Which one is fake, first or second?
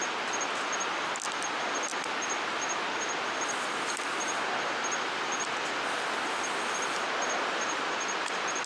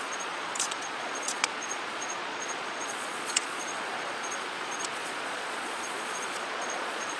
second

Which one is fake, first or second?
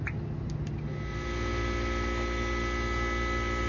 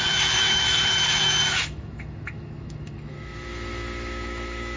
second